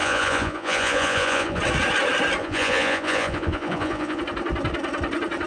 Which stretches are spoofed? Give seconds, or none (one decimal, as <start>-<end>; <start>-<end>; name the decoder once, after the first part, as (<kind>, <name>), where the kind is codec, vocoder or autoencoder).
0.0-1.6 (vocoder, Vocos); 2.4-4.2